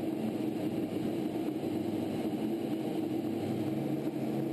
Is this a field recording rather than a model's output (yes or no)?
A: yes